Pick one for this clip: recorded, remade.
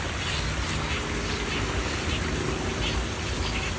recorded